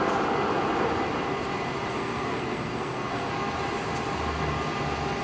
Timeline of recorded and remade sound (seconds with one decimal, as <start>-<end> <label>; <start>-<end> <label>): 0.0-1.9 recorded; 1.9-3.3 remade; 3.3-5.2 recorded